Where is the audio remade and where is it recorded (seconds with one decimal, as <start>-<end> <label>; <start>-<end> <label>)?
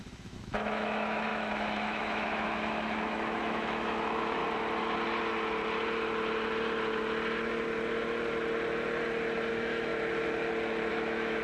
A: 0.0-4.4 remade; 4.4-9.5 recorded; 9.5-9.9 remade; 9.9-10.9 recorded; 10.9-11.4 remade